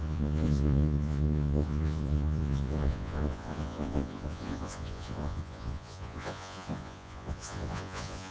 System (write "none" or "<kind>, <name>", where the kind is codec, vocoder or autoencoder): vocoder, Vocos